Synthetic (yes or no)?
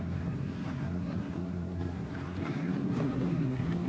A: yes